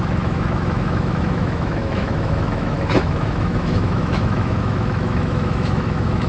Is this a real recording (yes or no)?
no